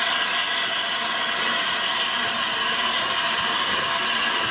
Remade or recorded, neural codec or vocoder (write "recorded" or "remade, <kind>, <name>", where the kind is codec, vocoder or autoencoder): recorded